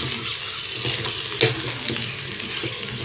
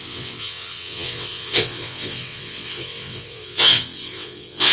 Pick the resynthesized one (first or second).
second